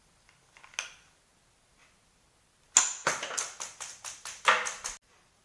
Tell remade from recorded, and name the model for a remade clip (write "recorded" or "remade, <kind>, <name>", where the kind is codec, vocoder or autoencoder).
recorded